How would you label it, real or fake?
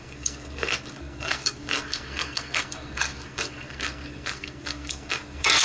fake